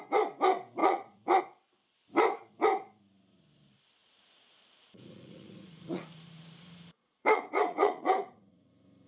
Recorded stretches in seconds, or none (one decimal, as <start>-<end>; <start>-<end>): 0.0-0.8; 1.4-4.0; 8.7-9.1